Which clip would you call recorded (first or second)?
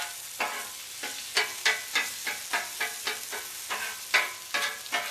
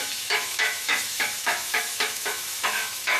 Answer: first